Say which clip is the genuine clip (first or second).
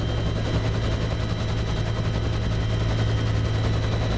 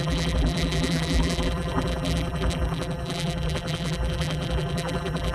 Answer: first